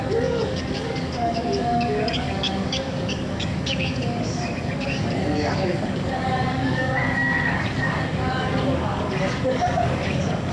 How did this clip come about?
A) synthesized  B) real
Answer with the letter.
A